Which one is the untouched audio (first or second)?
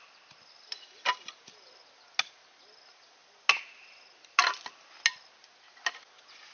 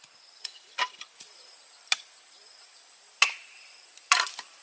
first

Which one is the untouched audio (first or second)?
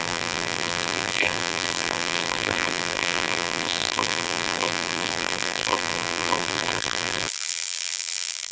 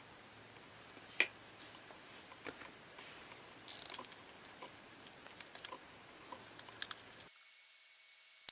second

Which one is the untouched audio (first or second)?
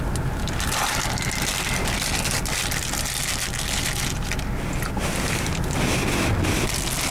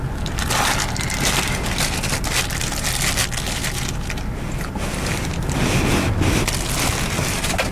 first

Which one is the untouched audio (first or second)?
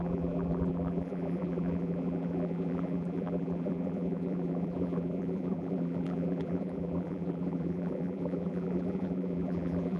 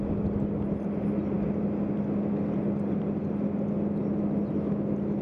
second